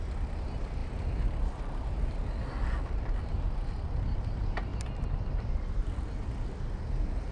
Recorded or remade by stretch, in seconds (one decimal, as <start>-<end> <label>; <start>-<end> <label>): 0.0-7.3 recorded